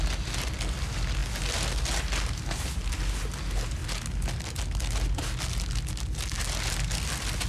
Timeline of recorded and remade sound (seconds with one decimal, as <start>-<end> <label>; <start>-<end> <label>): 0.0-7.5 recorded